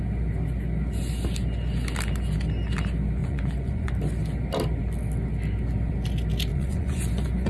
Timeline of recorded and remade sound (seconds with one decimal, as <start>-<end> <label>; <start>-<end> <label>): 0.0-3.2 recorded; 3.2-3.9 remade; 3.9-6.5 recorded; 6.5-7.5 remade